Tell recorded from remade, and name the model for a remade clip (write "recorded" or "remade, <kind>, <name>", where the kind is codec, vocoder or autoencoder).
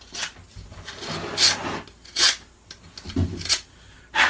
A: recorded